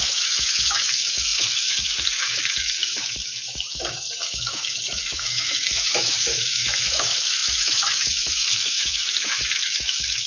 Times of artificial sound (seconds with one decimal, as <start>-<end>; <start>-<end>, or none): 0.0-10.3